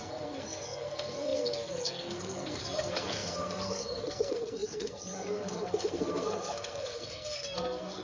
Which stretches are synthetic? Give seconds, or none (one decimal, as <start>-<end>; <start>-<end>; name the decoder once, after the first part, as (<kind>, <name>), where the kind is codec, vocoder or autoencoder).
0.0-8.0 (codec, SNAC)